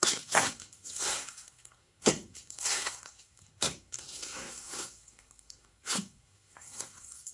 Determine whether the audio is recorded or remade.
remade